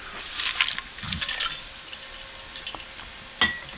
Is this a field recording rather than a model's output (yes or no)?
yes